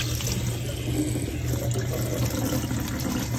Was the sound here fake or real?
real